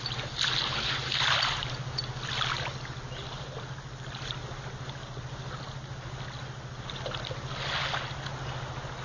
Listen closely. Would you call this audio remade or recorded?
recorded